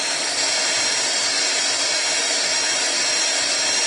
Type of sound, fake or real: real